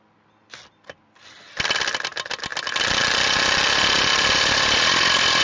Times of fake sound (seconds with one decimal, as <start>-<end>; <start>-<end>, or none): none